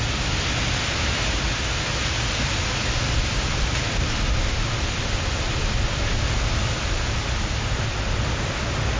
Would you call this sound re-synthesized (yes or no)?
no